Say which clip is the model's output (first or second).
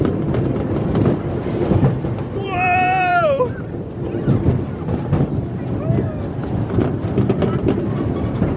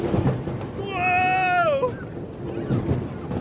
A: first